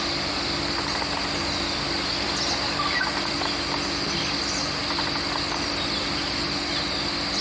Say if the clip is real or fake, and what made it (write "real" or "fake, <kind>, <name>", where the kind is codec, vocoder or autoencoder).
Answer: real